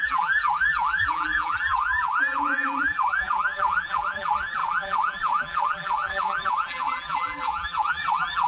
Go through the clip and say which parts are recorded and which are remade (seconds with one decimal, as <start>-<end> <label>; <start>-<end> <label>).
0.0-8.5 remade